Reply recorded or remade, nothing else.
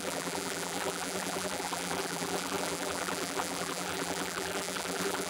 remade